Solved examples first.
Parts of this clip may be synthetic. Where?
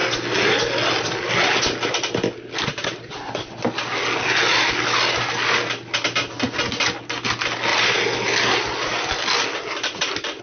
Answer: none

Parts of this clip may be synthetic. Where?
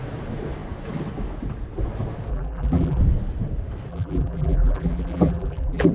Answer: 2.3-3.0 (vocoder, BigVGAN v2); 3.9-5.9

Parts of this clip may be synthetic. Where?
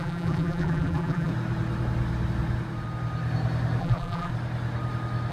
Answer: 0.0-1.3 (vocoder, BigVGAN v2); 3.8-4.3